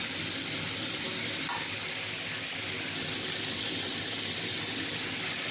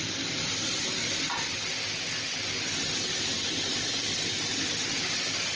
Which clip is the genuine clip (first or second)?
first